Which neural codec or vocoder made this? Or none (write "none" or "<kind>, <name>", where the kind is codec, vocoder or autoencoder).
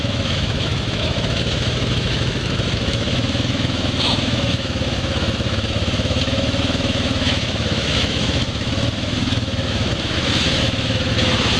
autoencoder, DAC-VAE